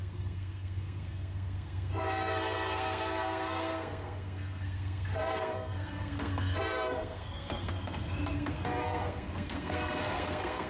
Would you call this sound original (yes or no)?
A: no